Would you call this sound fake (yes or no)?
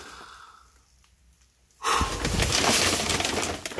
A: no